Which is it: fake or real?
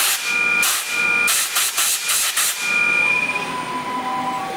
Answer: real